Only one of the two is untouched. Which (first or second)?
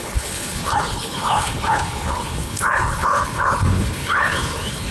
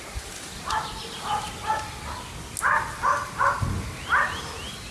second